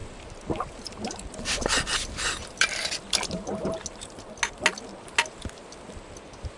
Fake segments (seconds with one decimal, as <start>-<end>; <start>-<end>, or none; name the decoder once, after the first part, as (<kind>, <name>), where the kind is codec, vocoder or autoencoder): 0.0-2.8 (vocoder, BigVGAN v2)

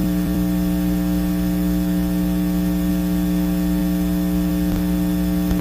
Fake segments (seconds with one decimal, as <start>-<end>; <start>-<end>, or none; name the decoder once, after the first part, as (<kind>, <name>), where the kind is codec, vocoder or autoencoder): 0.0-2.9 (vocoder, BigVGAN v2)

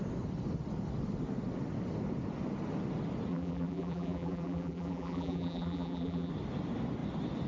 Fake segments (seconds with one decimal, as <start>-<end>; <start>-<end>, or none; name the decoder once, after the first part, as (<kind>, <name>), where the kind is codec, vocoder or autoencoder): 3.3-6.3 (vocoder, BigVGAN v2)